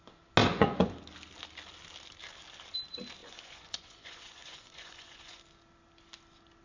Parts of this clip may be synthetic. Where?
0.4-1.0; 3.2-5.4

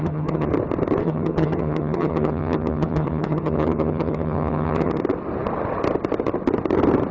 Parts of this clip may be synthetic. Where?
0.0-0.5; 1.0-5.0